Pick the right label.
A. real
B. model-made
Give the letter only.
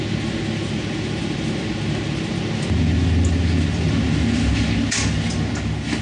A